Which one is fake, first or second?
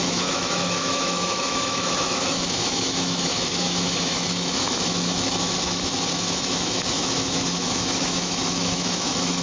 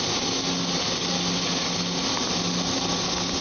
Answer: first